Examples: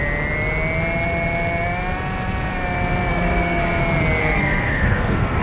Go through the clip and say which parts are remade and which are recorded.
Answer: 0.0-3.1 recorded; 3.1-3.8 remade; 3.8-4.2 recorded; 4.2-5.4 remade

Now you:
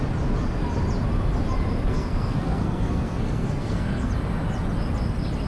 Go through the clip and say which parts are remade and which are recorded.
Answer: 0.0-1.9 recorded; 1.9-4.1 remade; 4.1-5.5 recorded

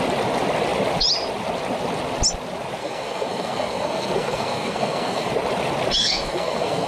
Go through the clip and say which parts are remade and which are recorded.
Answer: 0.0-2.8 recorded; 2.8-5.3 remade; 5.3-6.0 recorded; 6.0-6.9 remade

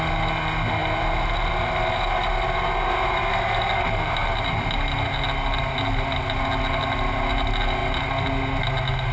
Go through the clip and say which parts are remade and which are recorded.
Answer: 0.0-9.1 recorded